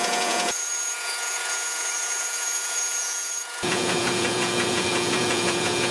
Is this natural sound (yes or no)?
no